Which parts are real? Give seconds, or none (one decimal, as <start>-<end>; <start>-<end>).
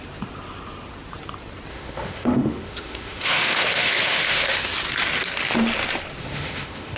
0.0-1.7; 4.7-6.2